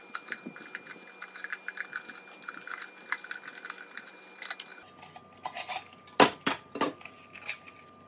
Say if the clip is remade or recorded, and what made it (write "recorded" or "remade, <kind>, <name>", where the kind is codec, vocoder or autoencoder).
recorded